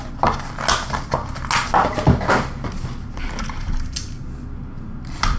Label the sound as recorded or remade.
recorded